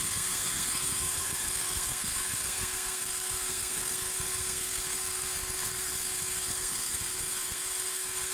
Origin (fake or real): fake